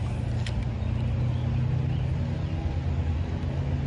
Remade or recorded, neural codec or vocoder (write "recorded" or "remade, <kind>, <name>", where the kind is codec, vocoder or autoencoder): recorded